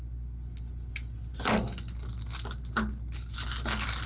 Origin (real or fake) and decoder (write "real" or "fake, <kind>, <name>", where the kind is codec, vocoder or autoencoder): real